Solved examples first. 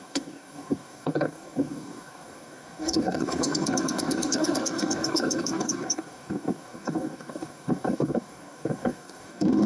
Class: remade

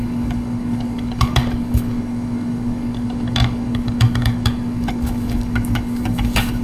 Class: remade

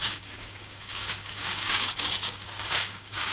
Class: remade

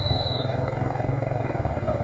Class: remade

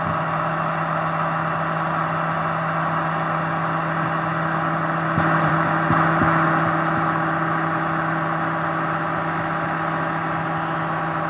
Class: recorded